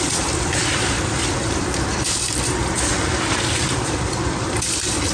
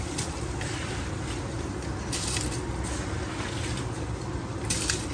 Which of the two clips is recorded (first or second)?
second